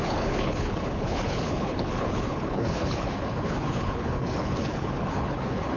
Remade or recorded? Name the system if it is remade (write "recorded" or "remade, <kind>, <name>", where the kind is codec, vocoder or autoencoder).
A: remade, codec, HILCodec